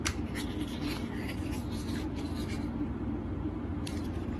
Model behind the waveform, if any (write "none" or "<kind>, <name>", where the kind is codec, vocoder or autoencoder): vocoder, BigVGAN v2